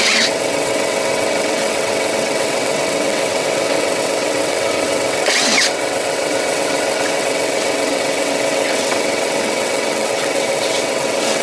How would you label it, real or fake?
fake